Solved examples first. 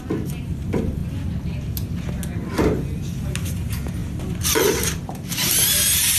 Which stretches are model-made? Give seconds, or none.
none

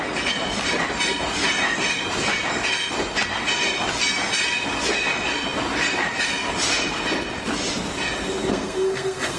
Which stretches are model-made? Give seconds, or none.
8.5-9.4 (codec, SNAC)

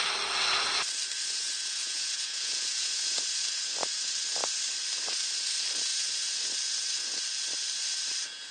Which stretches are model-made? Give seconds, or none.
1.8-3.0 (vocoder, Vocos)

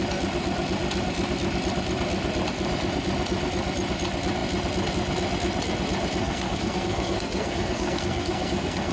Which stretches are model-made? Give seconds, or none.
6.2-8.9 (codec, SNAC)